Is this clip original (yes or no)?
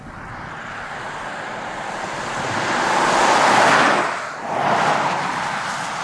yes